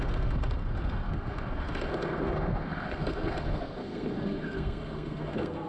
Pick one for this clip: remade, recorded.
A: remade